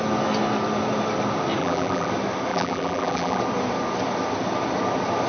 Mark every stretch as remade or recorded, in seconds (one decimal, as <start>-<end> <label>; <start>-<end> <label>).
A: 0.0-1.6 recorded; 1.6-2.1 remade; 2.1-2.5 recorded; 2.5-3.4 remade; 3.4-5.3 recorded